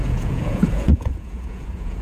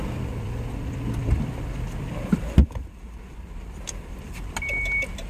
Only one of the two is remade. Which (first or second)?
first